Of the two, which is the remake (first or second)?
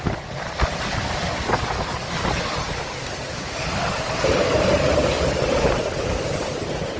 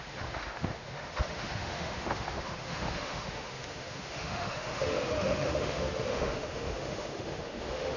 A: second